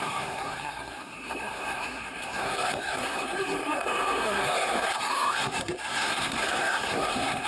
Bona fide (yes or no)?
no